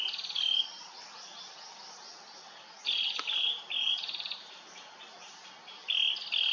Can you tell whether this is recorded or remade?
recorded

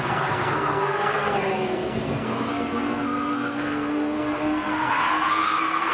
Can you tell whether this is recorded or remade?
remade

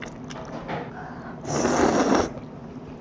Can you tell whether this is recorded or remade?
recorded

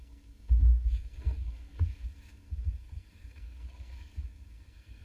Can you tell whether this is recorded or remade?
remade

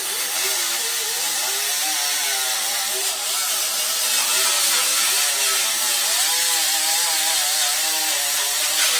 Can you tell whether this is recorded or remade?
recorded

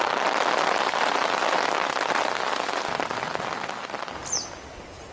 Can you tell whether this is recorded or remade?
recorded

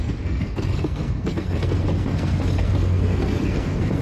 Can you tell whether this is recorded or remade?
remade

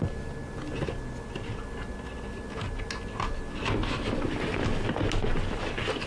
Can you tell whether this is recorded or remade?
recorded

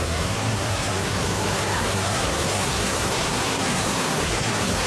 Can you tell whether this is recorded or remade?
remade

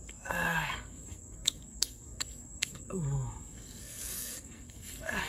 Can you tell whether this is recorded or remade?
remade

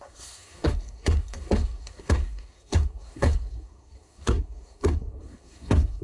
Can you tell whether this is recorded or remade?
remade